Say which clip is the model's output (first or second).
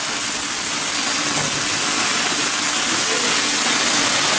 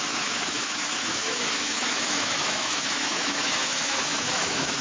second